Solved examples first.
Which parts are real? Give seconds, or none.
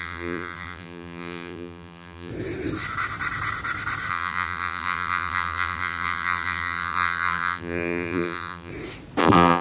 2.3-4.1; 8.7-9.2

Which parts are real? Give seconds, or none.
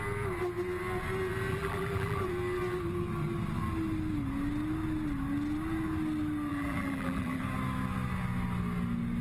0.0-1.5; 2.2-6.5; 7.4-9.2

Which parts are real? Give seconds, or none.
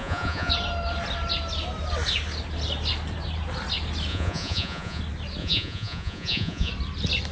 0.5-4.1; 5.0-5.4; 6.7-7.3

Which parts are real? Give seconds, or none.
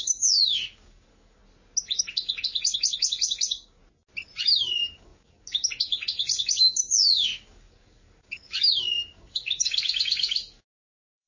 1.4-2.0; 3.8-4.4